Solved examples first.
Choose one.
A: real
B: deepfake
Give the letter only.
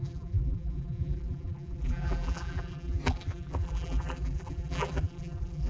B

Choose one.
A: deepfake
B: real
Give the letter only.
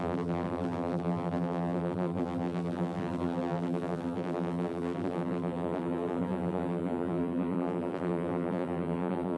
A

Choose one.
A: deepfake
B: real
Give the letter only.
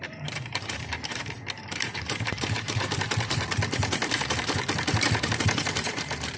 A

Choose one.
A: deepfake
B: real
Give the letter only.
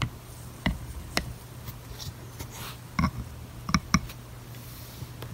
B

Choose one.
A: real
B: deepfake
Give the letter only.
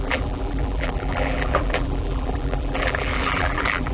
B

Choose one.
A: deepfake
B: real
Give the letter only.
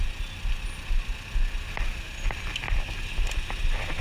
B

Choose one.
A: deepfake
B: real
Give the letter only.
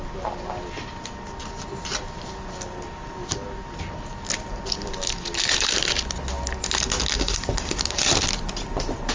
B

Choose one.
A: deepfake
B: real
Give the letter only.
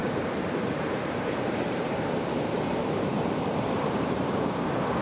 A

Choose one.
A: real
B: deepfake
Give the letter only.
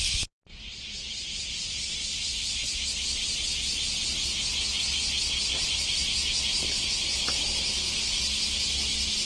A